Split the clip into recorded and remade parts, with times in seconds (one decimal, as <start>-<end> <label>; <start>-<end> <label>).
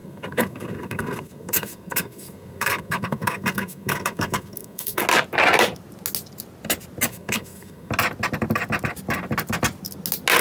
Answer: 0.0-5.0 remade; 5.0-7.1 recorded; 7.1-7.9 remade; 7.9-10.4 recorded